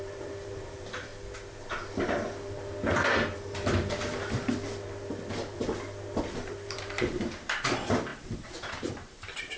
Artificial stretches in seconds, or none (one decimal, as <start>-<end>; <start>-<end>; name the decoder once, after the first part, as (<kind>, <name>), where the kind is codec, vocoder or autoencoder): 0.0-1.1 (vocoder, BigVGAN v2); 6.2-9.6